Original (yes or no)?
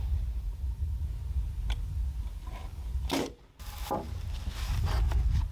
yes